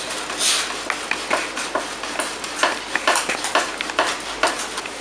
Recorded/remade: recorded